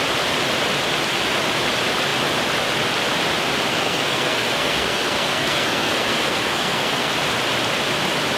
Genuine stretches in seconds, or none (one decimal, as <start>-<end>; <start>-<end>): 0.0-3.7; 7.1-8.4